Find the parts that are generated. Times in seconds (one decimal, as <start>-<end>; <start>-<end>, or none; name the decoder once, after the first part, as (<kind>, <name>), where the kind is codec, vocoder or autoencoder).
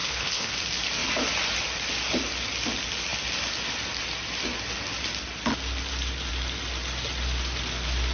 0.0-0.5 (codec, HILCodec)